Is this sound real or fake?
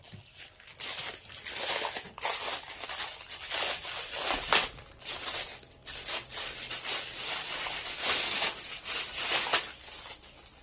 real